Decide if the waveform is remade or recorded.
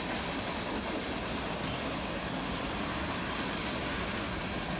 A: recorded